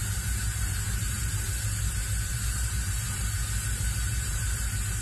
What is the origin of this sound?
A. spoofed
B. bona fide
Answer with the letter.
A